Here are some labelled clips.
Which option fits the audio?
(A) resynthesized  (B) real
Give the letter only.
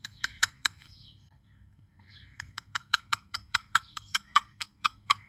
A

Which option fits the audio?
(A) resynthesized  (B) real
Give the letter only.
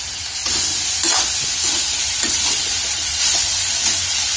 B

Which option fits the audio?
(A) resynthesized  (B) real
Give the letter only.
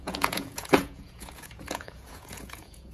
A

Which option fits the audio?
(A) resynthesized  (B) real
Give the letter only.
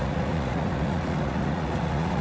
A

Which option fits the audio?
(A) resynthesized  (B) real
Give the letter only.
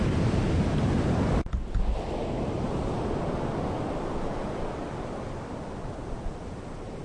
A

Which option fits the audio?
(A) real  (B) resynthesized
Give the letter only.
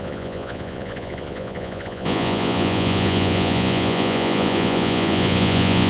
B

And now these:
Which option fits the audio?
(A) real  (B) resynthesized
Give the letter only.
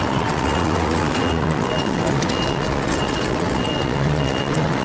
B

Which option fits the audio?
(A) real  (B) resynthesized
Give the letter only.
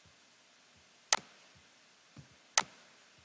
A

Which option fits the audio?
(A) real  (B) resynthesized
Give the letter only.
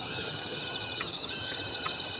B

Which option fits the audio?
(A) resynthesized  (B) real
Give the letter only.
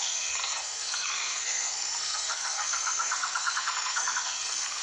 A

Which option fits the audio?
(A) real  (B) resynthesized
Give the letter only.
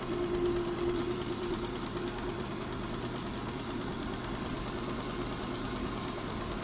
B